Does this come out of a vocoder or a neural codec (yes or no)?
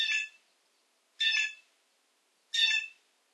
no